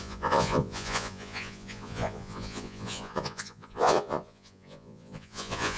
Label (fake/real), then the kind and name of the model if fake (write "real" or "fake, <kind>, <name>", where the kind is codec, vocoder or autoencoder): fake, vocoder, Vocos